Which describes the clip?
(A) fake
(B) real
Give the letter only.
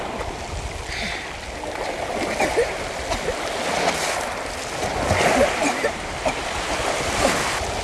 B